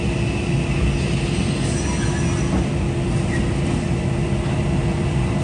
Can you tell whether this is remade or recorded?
recorded